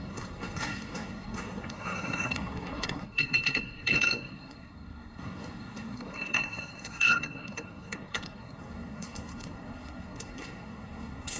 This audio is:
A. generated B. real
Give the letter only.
A